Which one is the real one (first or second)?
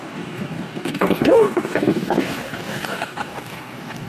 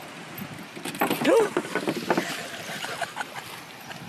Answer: second